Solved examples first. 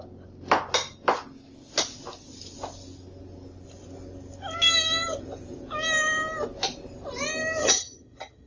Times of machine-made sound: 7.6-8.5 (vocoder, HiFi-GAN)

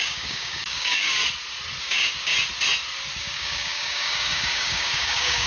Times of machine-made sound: 0.0-1.2 (codec, DAC); 1.8-2.3; 3.2-5.5

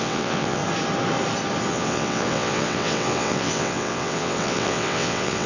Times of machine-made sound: 0.0-0.6 (vocoder, WaveNeXt); 1.7-5.5

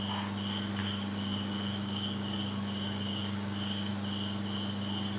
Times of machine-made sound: 0.8-3.9 (codec, DAC)

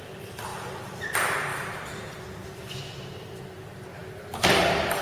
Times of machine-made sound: 0.5-1.1 (vocoder, BigVGAN v2); 1.5-3.4